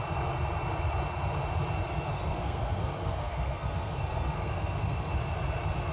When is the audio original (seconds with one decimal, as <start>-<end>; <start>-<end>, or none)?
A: 0.0-2.1; 5.1-5.9